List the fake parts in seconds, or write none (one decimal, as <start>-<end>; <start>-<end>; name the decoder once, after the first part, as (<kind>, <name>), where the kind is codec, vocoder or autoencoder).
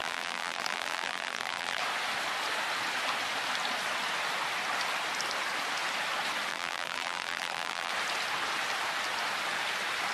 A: 0.0-1.8 (vocoder, BigVGAN v2); 6.5-7.9